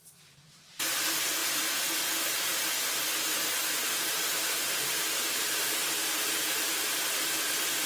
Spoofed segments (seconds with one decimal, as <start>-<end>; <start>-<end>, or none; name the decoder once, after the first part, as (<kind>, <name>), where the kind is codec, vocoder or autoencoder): 0.0-2.5 (vocoder, BigVGAN v2); 3.9-7.9